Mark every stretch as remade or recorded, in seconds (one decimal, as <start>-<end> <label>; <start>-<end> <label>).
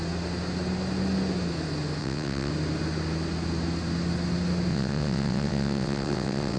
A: 0.0-2.0 recorded; 2.0-2.5 remade; 2.5-4.7 recorded; 4.7-6.6 remade